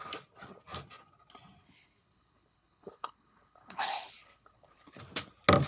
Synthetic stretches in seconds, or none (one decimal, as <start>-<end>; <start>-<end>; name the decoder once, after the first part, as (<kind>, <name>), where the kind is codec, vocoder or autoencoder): 1.6-5.0 (codec, HILCodec)